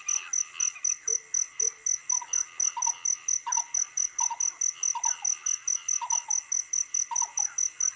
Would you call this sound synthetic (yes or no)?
no